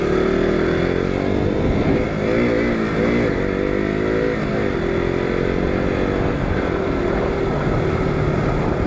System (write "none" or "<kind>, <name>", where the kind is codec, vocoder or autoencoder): none